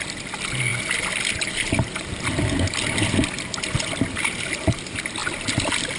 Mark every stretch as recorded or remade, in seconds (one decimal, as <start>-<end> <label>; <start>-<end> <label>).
0.0-6.0 recorded